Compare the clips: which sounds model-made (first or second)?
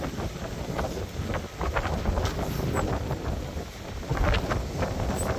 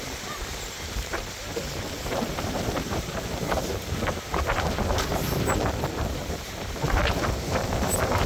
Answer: second